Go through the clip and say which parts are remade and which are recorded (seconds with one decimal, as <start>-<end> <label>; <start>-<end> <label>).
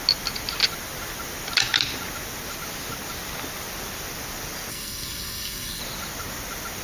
0.0-4.7 recorded; 4.7-5.8 remade; 5.8-6.8 recorded